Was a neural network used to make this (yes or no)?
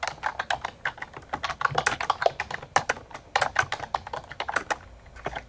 no